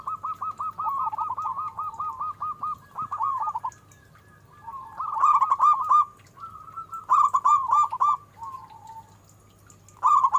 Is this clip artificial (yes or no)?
no